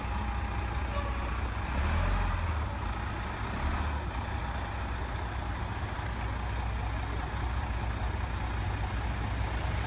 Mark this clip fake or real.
real